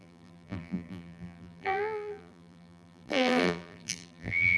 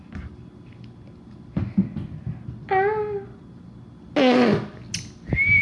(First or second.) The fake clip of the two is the first